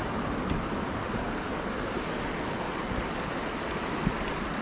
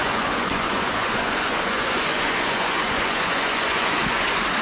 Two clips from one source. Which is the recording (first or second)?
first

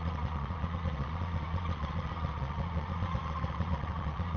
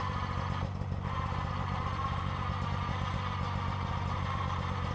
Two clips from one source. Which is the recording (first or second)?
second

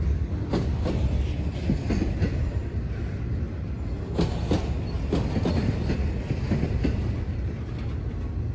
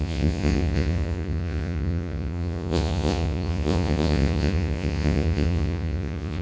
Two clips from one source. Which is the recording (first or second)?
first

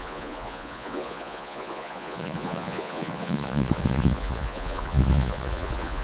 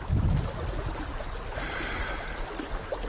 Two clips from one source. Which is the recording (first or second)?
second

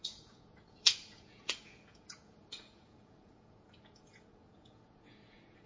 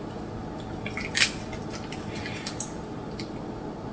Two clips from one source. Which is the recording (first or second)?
second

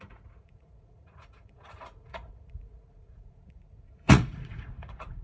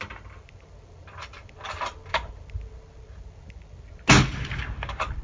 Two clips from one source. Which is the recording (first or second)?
second